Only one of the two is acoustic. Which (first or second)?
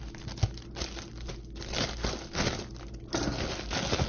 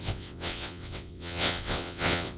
first